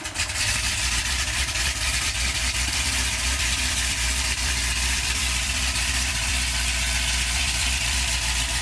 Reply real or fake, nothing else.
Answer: fake